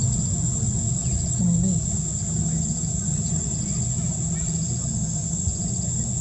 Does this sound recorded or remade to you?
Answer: recorded